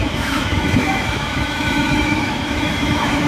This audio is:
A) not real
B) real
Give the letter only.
A